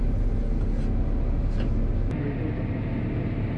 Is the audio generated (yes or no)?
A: no